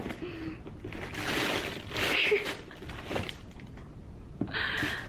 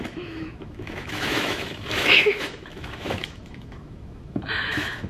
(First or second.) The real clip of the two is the first